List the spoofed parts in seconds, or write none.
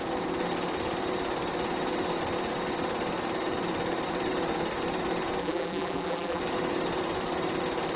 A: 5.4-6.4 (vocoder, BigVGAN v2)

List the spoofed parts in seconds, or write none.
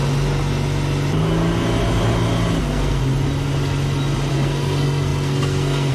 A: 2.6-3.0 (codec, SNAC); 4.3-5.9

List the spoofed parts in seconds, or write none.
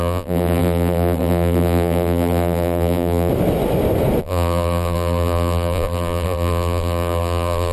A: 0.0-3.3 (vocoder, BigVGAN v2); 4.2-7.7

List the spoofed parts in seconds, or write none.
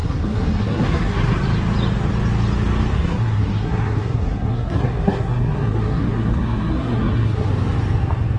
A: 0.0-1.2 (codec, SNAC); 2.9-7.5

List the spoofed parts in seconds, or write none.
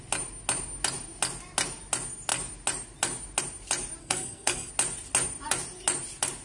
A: 4.0-4.7 (codec, SNAC)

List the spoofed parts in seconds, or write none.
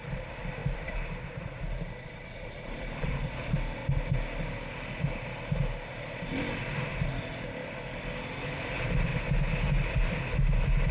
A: 0.0-3.8 (vocoder, BigVGAN v2); 6.9-7.6; 8.2-9.1; 10.1-10.9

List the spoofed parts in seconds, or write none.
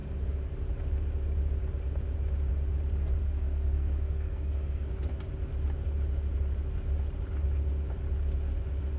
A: 3.2-4.9 (codec, SNAC)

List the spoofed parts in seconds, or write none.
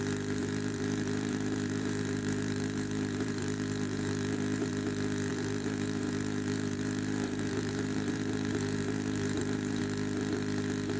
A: 0.4-4.7 (vocoder, BigVGAN v2); 5.3-9.8